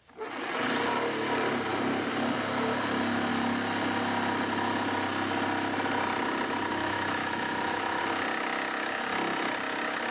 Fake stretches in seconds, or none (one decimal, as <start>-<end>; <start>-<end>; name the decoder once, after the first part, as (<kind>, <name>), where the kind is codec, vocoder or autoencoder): 6.7-8.0 (autoencoder, DAC-VAE)